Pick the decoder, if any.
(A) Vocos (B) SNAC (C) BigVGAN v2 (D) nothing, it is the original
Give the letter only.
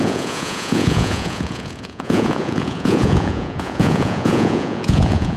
A